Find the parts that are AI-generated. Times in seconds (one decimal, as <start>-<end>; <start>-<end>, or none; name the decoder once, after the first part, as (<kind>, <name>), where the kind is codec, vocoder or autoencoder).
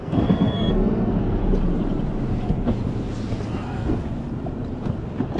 0.0-1.4 (codec, SNAC); 3.5-4.0